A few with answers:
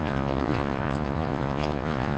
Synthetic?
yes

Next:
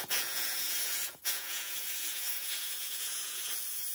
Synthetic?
yes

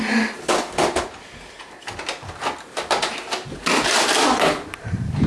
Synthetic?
no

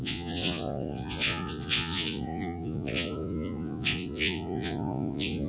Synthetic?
yes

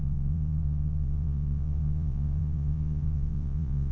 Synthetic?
yes